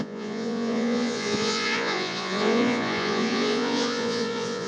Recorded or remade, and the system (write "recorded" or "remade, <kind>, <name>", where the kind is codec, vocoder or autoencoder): remade, vocoder, Vocos